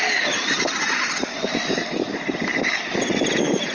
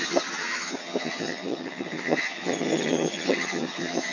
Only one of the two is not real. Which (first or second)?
second